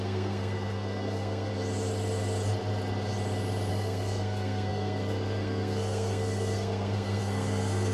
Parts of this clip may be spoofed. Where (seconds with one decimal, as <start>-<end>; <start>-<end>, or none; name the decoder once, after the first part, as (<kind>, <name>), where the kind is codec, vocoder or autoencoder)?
0.0-1.5 (codec, SNAC); 3.7-7.9